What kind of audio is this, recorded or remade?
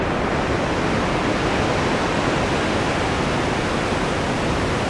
recorded